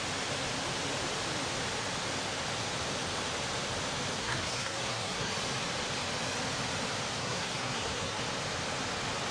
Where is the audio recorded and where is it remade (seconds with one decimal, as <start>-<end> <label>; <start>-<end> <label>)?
0.0-4.2 recorded; 4.2-5.3 remade; 5.3-7.2 recorded; 7.2-8.2 remade; 8.2-9.3 recorded